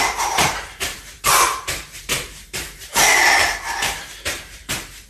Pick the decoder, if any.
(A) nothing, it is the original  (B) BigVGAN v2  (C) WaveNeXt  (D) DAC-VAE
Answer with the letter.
B